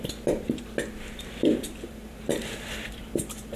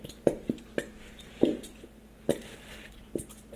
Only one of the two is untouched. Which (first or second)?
second